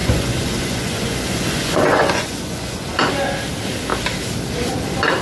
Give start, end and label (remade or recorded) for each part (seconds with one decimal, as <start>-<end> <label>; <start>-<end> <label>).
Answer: 0.0-3.1 remade; 3.1-5.2 recorded